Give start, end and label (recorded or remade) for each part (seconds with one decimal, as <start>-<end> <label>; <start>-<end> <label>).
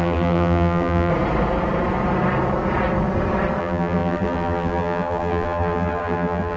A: 0.0-1.1 remade; 1.1-3.6 recorded; 3.6-6.6 remade